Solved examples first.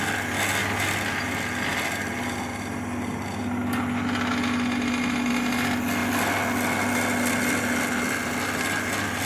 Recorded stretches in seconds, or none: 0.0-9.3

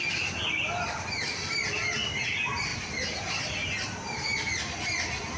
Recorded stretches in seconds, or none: 0.0-5.4

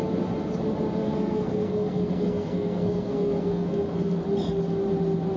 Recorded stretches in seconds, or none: 0.0-1.0; 4.2-5.4

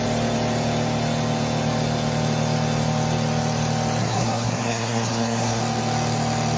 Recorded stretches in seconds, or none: 0.0-4.0; 5.6-6.6

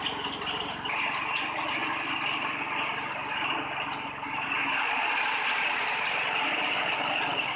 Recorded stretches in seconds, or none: 0.0-7.6